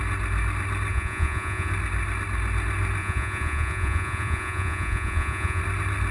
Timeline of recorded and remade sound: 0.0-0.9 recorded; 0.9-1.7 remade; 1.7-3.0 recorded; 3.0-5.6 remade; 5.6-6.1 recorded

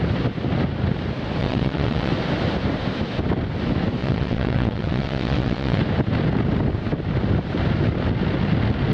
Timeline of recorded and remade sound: 0.0-1.4 recorded; 1.4-2.1 remade; 2.1-4.0 recorded; 4.0-5.8 remade; 5.8-8.9 recorded

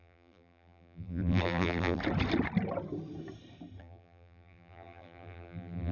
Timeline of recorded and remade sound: 0.0-2.0 remade; 2.0-3.8 recorded; 3.8-5.9 remade

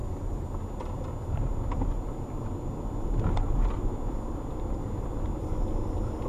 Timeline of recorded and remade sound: 0.0-6.3 recorded

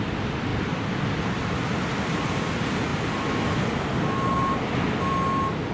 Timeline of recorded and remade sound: 0.0-5.7 recorded

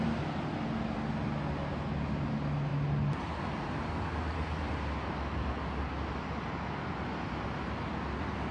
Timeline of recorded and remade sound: 0.0-8.5 recorded

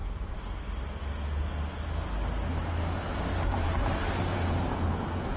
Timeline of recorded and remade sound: 0.0-1.0 remade; 1.0-2.5 recorded; 2.5-5.4 remade